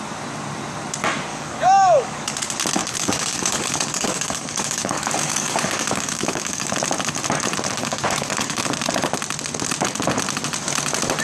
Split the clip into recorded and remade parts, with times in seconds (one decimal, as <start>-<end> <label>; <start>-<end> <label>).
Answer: 0.0-1.3 recorded; 1.3-2.4 remade; 2.4-2.8 recorded; 2.8-6.7 remade; 6.7-7.8 recorded; 7.8-8.6 remade; 8.6-11.2 recorded